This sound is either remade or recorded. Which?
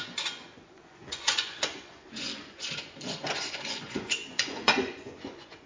remade